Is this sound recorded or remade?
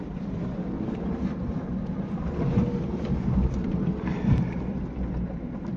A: remade